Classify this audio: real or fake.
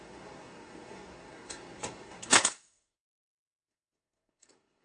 fake